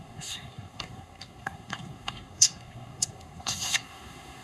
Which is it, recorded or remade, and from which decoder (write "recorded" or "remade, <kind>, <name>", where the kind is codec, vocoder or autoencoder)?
remade, codec, SNAC